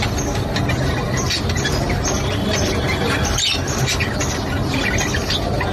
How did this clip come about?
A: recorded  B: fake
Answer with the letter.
A